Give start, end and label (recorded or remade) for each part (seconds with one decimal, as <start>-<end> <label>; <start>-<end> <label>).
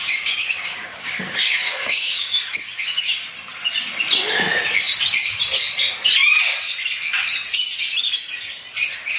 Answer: 0.0-3.0 remade; 3.0-9.2 recorded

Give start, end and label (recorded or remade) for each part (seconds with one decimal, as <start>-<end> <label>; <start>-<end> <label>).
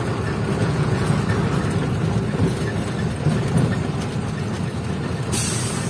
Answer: 0.0-0.6 recorded; 0.6-1.2 remade; 1.2-5.9 recorded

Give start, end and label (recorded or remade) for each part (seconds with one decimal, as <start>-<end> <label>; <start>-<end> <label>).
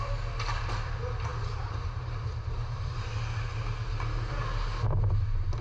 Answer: 0.0-1.3 recorded; 1.3-3.1 remade; 3.1-5.6 recorded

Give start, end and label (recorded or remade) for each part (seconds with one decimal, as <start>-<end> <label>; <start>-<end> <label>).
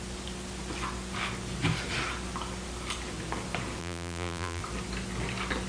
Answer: 0.0-3.8 recorded; 3.8-4.6 remade; 4.6-5.7 recorded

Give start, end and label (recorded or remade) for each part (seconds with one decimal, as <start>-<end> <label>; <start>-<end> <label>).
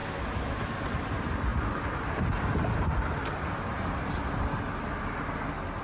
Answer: 0.0-0.7 remade; 0.7-5.8 recorded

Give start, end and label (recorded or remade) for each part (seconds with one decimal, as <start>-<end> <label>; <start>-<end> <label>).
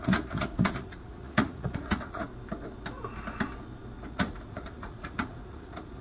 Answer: 0.0-2.3 remade; 2.3-4.1 recorded; 4.1-6.0 remade